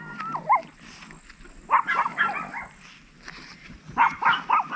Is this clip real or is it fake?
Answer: real